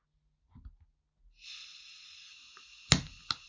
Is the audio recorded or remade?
recorded